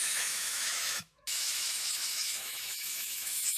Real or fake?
fake